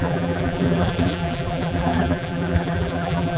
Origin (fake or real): fake